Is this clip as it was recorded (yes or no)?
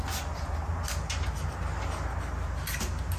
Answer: yes